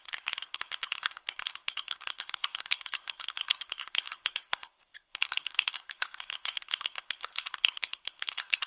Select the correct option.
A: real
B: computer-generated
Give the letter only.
B